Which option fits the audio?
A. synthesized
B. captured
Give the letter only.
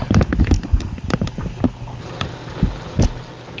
B